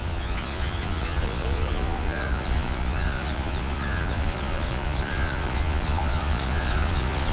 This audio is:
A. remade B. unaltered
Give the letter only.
A